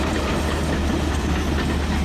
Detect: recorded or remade recorded